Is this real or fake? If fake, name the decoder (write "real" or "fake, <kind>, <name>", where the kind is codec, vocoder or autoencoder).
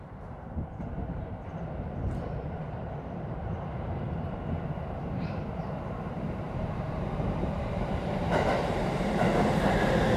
fake, vocoder, BigVGAN v2